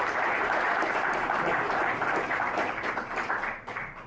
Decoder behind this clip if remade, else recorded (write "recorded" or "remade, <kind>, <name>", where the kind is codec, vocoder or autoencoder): recorded